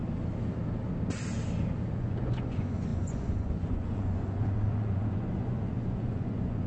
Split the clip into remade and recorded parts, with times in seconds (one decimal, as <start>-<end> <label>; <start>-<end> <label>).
0.0-1.9 recorded; 1.9-6.7 remade